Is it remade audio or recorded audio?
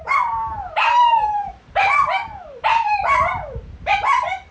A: remade